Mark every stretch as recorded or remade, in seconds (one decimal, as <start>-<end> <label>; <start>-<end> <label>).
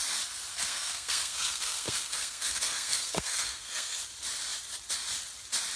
0.0-0.5 recorded; 0.5-4.0 remade; 4.0-5.8 recorded